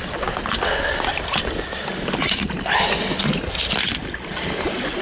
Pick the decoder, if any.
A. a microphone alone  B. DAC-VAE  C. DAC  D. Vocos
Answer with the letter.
A